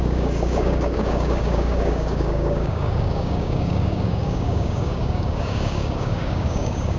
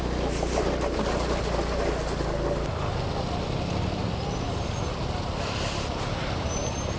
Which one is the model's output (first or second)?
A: first